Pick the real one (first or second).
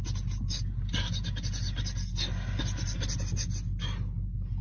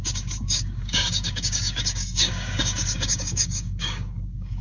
first